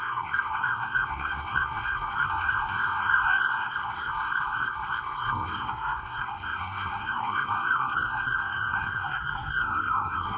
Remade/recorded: remade